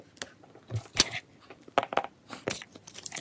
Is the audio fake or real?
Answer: real